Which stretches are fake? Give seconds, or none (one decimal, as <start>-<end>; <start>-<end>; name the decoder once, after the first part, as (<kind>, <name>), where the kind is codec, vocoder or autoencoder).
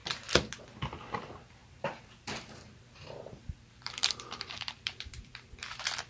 1.6-5.3 (vocoder, BigVGAN v2)